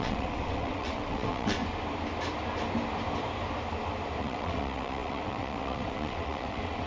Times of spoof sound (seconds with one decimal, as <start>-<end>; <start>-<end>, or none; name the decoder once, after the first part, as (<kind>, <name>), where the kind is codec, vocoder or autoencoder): 0.0-1.6 (vocoder, WaveNeXt); 4.2-6.9